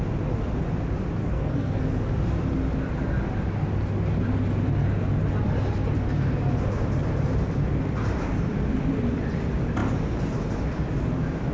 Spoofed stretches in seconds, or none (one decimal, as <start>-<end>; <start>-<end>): 1.2-1.8